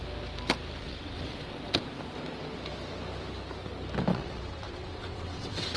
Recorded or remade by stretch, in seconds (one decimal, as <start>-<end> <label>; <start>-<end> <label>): 0.0-0.8 recorded; 0.8-1.6 remade; 1.6-4.1 recorded; 4.1-5.8 remade